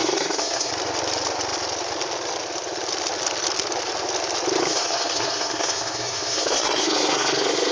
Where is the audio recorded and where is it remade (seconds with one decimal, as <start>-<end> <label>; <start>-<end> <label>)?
0.0-0.7 remade; 0.7-4.6 recorded; 4.6-7.7 remade